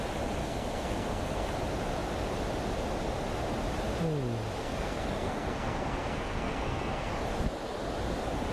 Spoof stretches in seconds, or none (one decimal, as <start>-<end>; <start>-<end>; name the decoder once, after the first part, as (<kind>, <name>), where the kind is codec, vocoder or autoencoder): 0.4-1.5 (codec, SNAC); 4.6-7.1